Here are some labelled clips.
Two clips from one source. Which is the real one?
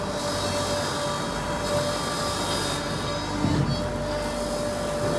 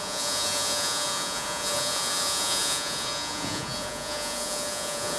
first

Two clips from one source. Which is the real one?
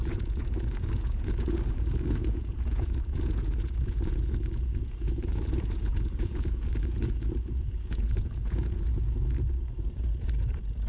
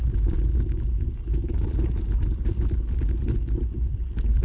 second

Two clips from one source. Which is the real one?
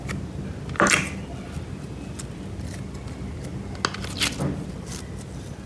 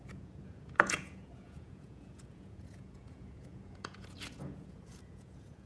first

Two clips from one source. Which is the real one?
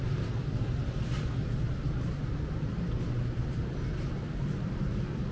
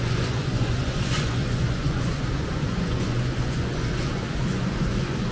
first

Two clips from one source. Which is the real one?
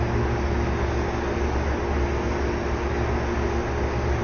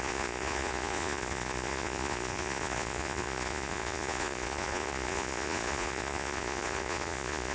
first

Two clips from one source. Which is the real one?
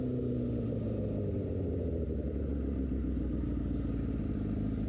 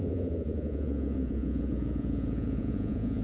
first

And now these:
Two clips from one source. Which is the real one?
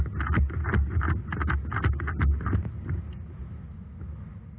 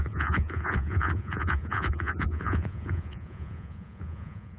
first